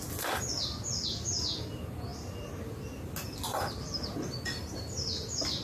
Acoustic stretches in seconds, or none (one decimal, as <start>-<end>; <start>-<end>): 0.0-5.6